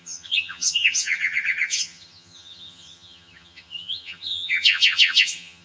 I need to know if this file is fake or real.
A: fake